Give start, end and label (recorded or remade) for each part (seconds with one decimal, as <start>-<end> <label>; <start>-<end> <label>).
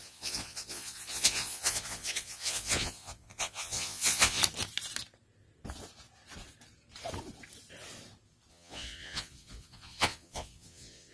0.0-4.4 remade; 4.4-8.5 recorded; 8.5-11.1 remade